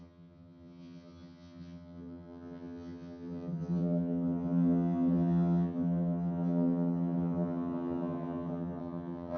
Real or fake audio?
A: fake